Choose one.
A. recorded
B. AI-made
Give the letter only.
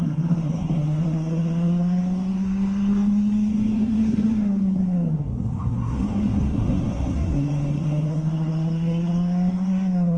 B